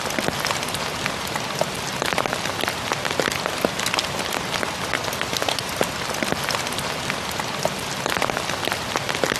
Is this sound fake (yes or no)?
no